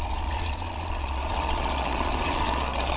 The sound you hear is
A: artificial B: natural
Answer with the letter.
A